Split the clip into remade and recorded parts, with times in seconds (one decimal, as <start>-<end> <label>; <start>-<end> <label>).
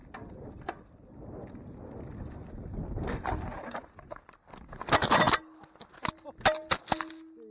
0.0-7.5 recorded